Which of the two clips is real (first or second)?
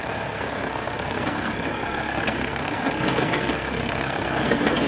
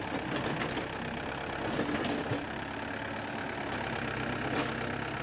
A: second